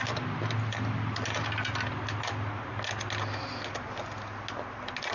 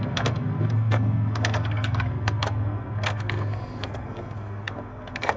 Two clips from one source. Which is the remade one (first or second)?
second